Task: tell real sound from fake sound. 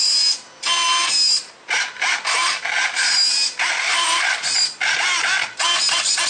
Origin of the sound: real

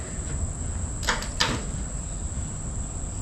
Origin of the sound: real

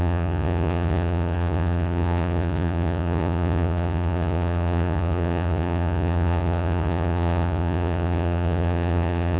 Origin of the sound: fake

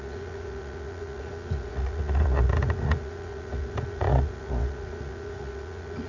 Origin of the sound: fake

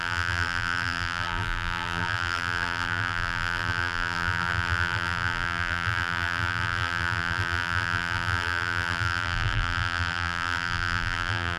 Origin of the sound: fake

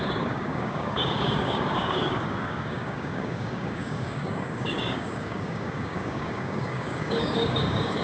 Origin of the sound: fake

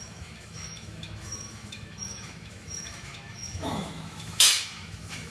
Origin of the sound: fake